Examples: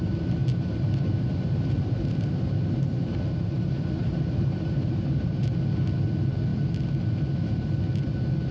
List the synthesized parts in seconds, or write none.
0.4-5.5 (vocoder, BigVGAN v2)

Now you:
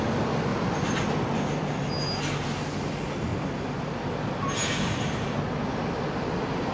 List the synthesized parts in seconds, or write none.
0.5-1.8 (vocoder, BigVGAN v2)

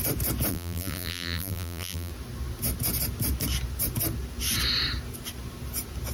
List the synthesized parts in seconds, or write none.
0.5-2.1 (vocoder, BigVGAN v2)